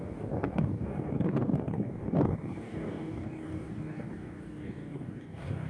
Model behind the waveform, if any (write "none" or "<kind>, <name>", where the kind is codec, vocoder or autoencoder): codec, DAC